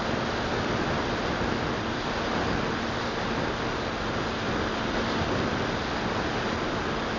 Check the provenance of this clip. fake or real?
real